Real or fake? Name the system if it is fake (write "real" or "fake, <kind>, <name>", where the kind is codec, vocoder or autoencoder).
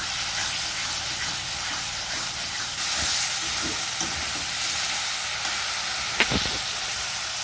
real